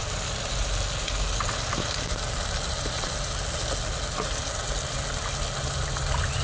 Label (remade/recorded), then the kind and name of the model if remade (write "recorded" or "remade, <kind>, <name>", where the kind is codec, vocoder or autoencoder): recorded